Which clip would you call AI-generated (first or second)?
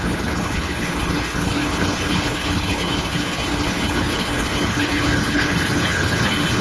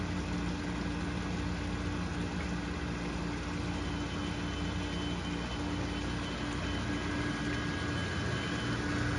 first